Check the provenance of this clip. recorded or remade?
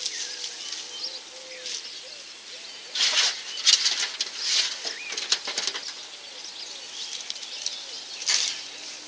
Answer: recorded